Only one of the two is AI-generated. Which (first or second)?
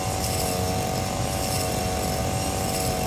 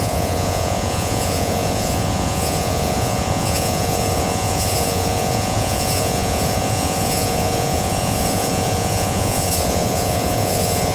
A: second